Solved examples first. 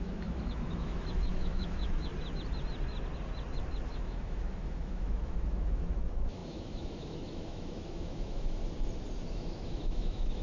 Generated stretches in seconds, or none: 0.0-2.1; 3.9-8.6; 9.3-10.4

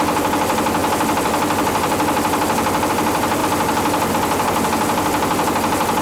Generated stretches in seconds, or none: none

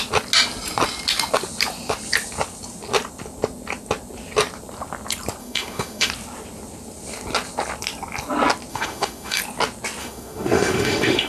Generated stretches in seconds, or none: 5.4-6.1; 8.7-9.4; 10.0-11.3

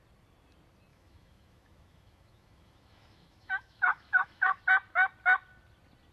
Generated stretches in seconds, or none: 0.9-4.6

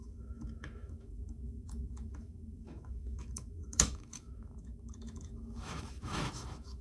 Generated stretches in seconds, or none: 0.0-6.8

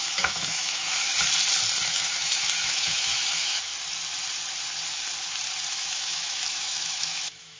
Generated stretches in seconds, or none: 0.0-1.1; 1.9-3.7; 5.7-7.6

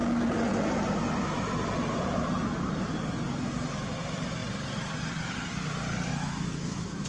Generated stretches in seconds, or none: 6.1-7.1

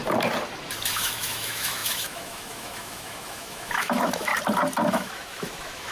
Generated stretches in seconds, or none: 0.9-4.3; 4.9-5.9